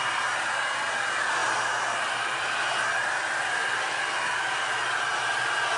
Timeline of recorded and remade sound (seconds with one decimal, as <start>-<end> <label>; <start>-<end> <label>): 0.0-5.8 recorded